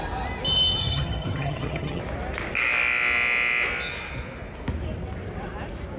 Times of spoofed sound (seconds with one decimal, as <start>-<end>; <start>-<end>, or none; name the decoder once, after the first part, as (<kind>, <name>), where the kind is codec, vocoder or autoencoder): 0.8-2.0 (vocoder, HiFi-GAN)